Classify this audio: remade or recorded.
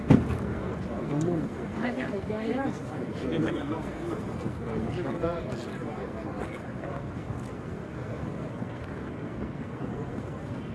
remade